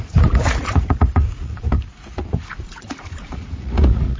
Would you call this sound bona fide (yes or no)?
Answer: no